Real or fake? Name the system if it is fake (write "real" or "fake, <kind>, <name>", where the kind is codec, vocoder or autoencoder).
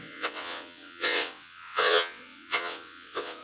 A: fake, vocoder, WaveNeXt